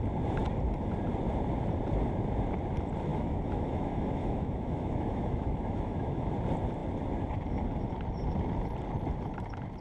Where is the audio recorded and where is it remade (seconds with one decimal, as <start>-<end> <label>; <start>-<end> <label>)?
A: 0.0-3.1 recorded; 3.1-6.3 remade; 6.3-9.8 recorded